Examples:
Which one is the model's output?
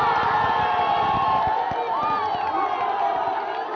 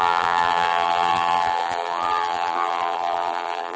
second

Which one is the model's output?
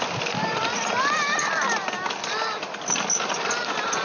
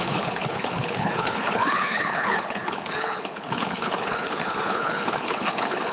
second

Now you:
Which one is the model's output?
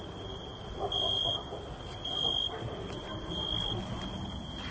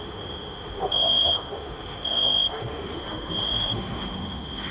second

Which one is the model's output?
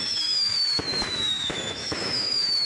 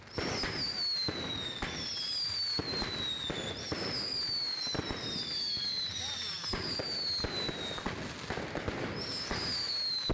first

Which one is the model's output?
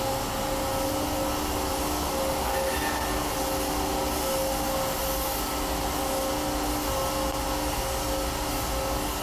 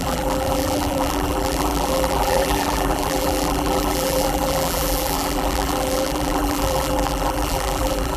second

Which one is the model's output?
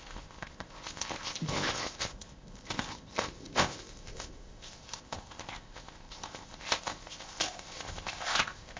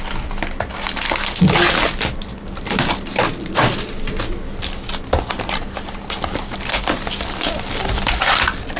first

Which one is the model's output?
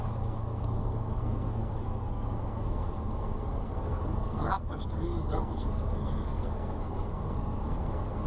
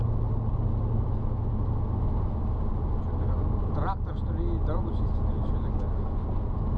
first